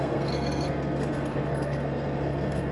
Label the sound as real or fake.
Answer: fake